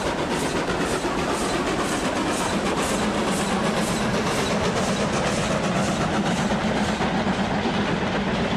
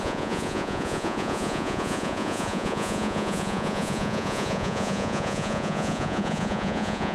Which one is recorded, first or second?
first